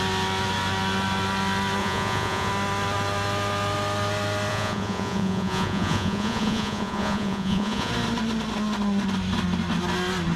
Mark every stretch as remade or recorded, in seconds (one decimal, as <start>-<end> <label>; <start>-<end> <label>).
0.0-1.8 recorded; 1.8-2.5 remade; 2.5-4.5 recorded; 4.5-7.9 remade; 7.9-10.4 recorded